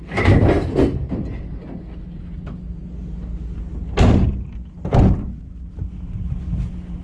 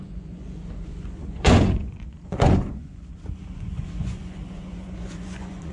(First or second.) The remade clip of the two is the second